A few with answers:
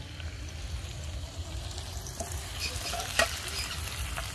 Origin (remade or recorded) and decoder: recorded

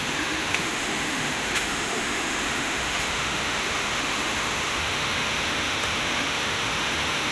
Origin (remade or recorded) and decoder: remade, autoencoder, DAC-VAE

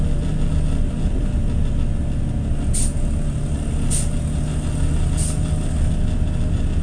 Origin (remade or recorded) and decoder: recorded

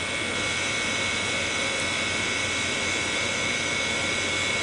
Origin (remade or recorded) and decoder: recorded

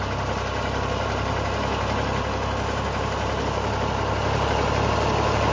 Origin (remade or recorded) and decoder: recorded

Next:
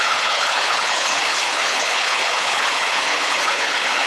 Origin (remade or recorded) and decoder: remade, codec, HILCodec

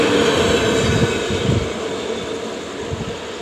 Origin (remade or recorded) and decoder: recorded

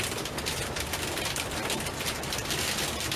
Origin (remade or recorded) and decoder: recorded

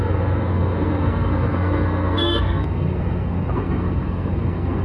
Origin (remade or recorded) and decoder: remade, codec, SNAC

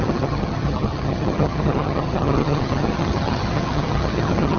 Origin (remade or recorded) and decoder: remade, vocoder, HiFi-GAN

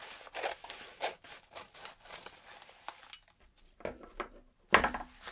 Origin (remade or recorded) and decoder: recorded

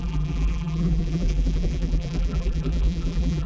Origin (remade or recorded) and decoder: remade, vocoder, BigVGAN v2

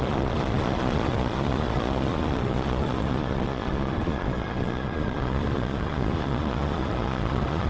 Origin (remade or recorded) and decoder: remade, vocoder, Vocos